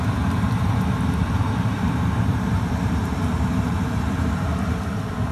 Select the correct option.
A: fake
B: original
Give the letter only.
A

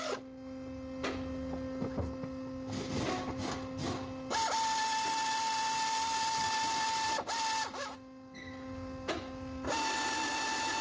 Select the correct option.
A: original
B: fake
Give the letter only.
A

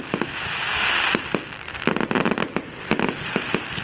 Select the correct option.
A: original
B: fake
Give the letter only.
A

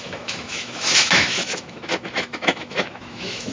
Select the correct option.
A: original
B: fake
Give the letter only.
B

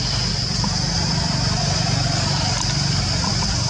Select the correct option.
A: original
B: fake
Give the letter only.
A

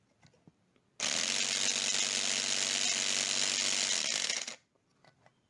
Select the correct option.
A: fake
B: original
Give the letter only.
B